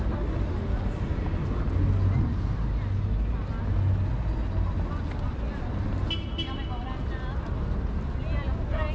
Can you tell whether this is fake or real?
real